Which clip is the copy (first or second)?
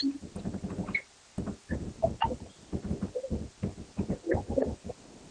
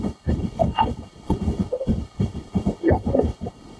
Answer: second